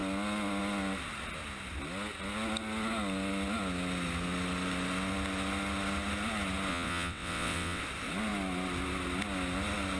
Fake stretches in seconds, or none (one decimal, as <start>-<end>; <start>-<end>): 6.7-7.8